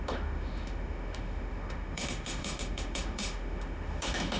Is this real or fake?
fake